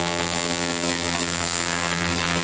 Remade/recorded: remade